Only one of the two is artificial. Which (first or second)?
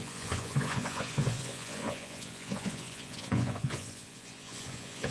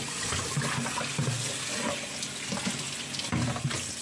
first